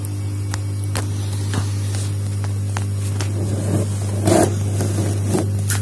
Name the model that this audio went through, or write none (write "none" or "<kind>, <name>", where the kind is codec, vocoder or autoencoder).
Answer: none